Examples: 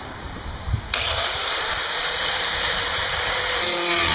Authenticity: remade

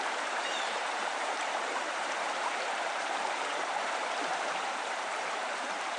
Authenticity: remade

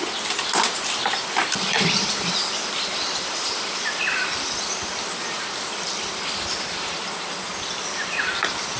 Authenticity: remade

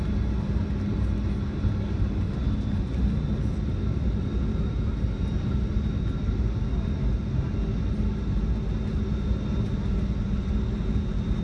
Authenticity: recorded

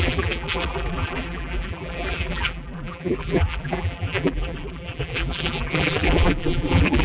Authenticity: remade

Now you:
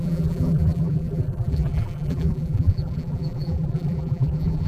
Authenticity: remade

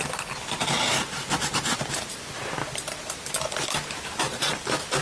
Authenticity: remade